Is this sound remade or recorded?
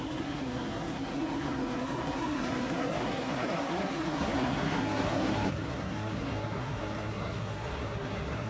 remade